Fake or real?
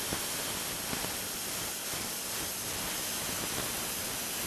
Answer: real